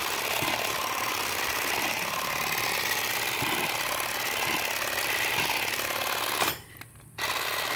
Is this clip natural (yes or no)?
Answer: yes